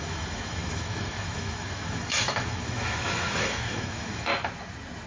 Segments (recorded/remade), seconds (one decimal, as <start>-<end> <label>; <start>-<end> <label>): 0.0-4.3 remade; 4.3-5.1 recorded